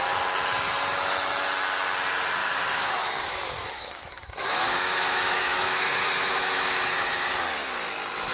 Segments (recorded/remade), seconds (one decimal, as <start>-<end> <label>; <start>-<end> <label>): 0.0-2.4 recorded; 2.4-7.4 remade; 7.4-8.3 recorded

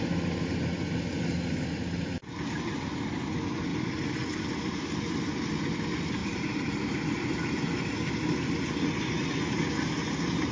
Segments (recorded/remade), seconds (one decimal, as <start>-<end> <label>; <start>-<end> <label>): 0.0-10.5 recorded